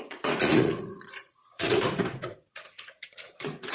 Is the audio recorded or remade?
remade